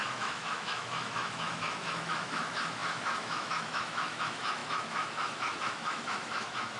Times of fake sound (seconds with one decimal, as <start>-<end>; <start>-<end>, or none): 0.0-6.8